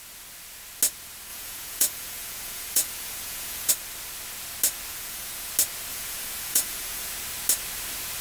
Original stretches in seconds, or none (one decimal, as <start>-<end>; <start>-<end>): 0.0-1.3; 3.7-4.9; 5.5-5.9; 7.1-8.2